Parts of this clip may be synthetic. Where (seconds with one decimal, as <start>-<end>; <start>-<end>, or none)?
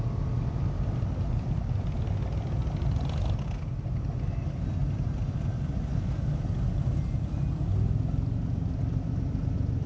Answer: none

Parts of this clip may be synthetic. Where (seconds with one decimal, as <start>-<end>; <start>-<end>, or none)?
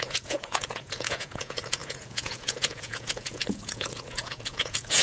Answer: 0.0-5.0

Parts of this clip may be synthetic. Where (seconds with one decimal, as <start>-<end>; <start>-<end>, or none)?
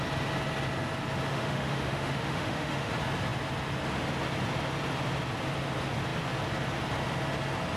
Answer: 1.3-2.9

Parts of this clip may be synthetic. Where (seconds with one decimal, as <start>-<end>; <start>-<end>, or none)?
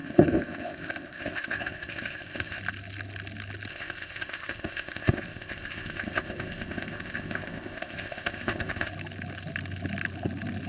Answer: 0.0-2.6; 3.7-8.9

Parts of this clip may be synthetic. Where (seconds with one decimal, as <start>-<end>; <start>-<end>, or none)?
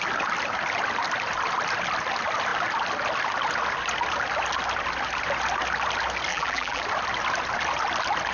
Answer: 6.3-6.8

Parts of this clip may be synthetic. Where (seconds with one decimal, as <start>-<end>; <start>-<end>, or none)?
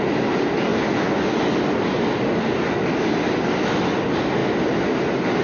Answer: none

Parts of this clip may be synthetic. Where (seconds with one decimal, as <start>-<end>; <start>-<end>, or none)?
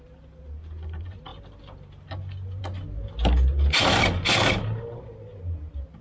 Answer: none